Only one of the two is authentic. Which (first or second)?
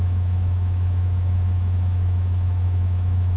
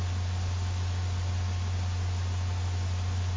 second